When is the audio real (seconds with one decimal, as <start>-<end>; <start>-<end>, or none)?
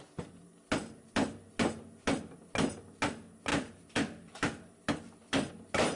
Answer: 0.0-0.8; 1.5-3.5; 5.5-6.0